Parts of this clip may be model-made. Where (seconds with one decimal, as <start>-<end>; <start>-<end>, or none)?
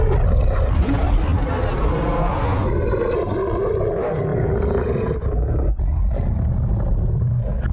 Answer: 4.3-5.1